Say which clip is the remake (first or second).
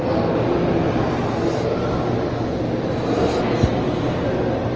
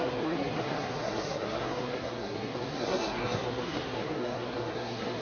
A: second